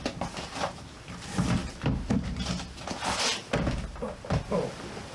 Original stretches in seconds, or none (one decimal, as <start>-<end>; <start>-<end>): 0.0-5.1